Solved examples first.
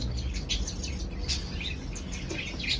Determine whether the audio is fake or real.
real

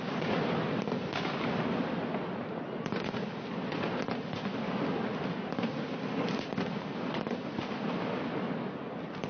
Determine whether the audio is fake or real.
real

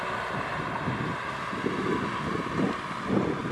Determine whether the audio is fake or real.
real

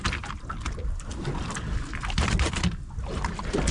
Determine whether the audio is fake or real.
real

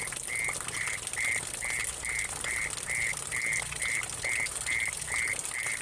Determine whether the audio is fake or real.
real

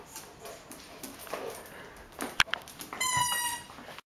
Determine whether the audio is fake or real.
real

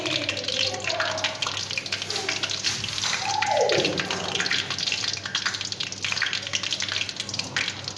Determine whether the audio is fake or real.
real